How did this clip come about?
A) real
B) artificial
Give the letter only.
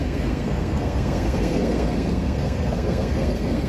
B